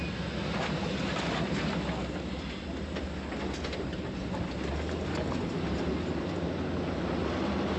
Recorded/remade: recorded